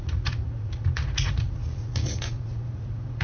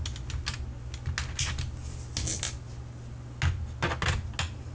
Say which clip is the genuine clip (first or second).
second